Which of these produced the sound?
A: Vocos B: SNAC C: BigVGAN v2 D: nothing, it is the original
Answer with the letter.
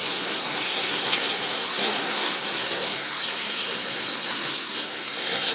B